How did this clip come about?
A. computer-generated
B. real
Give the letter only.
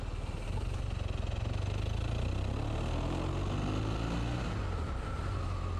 B